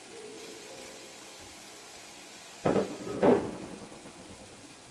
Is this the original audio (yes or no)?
no